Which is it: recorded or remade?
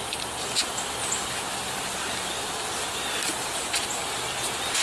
recorded